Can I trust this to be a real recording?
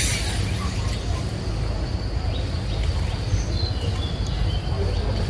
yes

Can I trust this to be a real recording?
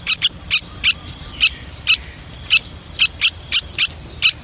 yes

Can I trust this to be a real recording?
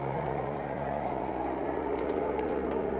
no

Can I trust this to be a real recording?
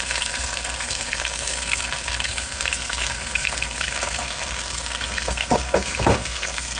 no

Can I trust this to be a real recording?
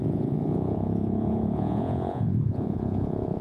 no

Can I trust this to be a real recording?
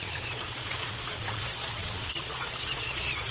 no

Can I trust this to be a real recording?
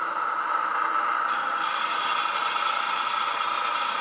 yes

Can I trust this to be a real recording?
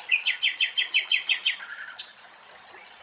no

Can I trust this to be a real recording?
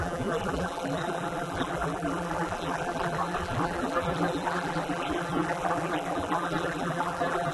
no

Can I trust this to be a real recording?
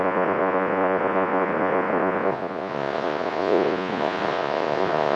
no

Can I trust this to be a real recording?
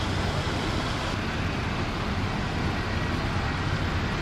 yes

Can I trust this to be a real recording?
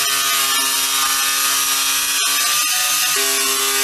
yes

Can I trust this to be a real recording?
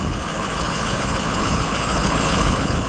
no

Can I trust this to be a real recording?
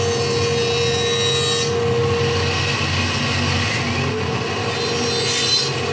yes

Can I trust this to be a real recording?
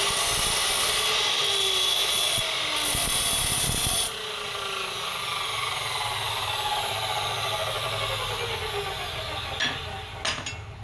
yes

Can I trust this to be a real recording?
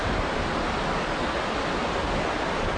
yes